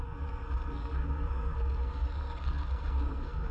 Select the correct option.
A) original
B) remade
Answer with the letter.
B